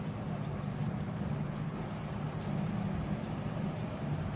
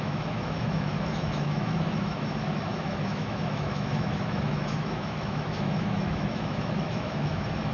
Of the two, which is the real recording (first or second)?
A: first